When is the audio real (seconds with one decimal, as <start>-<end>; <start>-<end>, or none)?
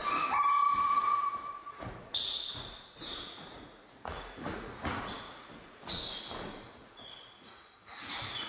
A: 0.0-0.8; 6.0-6.7